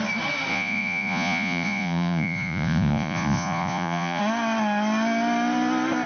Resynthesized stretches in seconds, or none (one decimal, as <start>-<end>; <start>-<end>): 0.5-4.2